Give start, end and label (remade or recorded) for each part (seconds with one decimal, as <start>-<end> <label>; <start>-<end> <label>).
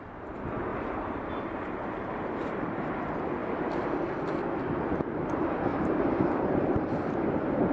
0.0-0.7 recorded; 0.7-3.0 remade; 3.0-3.4 recorded; 3.4-4.0 remade; 4.0-5.7 recorded; 5.7-7.2 remade; 7.2-7.7 recorded